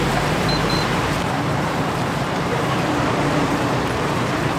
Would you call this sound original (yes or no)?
no